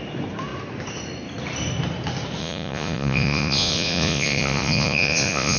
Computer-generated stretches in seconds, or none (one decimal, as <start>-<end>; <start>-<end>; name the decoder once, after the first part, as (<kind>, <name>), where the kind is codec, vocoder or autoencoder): 2.4-5.6 (vocoder, Vocos)